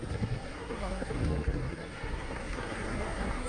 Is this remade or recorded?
remade